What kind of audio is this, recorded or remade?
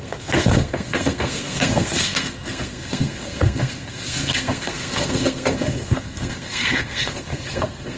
remade